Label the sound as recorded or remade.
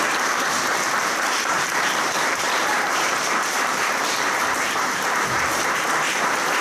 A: remade